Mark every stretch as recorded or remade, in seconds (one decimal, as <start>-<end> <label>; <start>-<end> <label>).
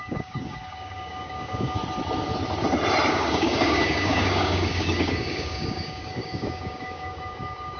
0.0-1.8 remade; 1.8-3.1 recorded; 3.1-7.8 remade